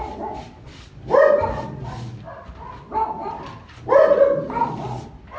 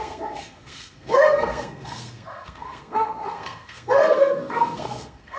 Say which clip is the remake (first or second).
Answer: second